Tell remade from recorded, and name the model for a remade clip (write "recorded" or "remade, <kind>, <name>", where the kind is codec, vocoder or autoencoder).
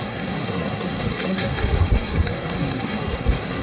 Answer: remade, codec, SNAC